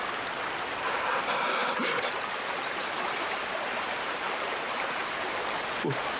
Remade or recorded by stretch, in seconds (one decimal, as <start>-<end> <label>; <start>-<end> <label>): 0.0-1.6 recorded; 1.6-5.2 remade; 5.2-6.2 recorded